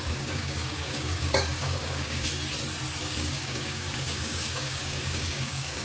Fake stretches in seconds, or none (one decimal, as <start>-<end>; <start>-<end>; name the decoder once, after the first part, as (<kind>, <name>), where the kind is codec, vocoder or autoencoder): 0.0-2.3 (codec, DAC); 3.0-5.8